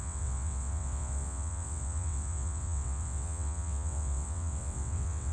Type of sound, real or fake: fake